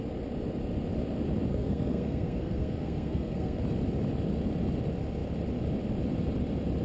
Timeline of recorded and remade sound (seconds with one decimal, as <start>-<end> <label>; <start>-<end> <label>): 0.0-1.5 recorded; 1.5-3.6 remade; 3.6-6.8 recorded